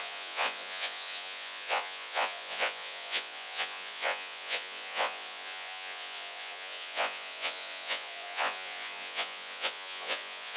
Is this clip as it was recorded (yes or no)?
no